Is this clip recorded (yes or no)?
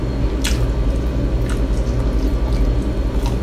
yes